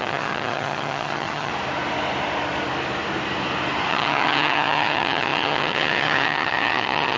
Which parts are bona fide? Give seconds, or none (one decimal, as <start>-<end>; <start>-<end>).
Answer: 1.5-3.9

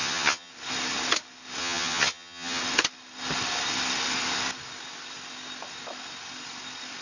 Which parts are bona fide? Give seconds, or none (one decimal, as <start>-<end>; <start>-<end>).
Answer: 0.5-1.6; 2.6-7.0

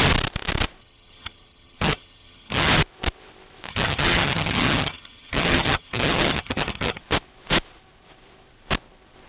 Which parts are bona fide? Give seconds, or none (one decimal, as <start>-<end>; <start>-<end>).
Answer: 0.0-0.8; 2.7-3.7; 7.0-9.3

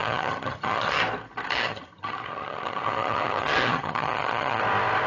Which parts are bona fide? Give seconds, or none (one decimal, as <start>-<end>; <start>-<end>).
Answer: 1.0-1.5; 4.6-5.1

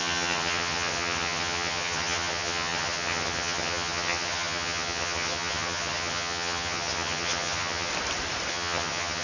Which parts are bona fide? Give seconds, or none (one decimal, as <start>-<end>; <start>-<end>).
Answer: 7.9-8.5